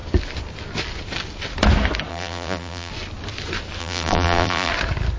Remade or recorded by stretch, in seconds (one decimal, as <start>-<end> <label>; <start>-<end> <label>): 0.0-2.1 recorded; 2.1-2.9 remade; 2.9-3.8 recorded; 3.8-4.7 remade; 4.7-5.2 recorded